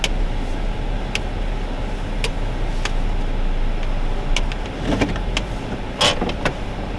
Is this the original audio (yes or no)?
yes